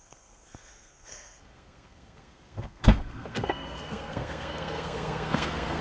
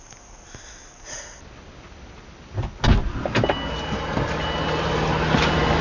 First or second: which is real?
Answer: second